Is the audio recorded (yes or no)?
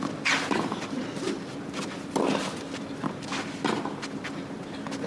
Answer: yes